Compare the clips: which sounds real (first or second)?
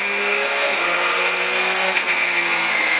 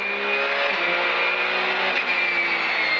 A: second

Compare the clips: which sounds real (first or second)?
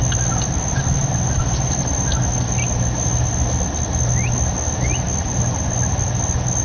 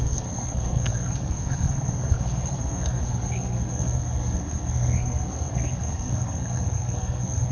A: first